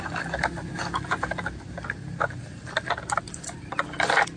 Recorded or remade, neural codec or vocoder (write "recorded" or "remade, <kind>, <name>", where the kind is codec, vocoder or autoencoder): recorded